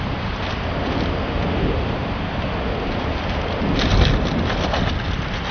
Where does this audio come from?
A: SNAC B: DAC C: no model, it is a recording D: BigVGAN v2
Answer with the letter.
C